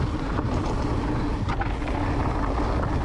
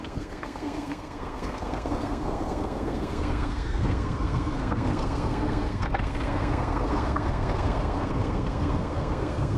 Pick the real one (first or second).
first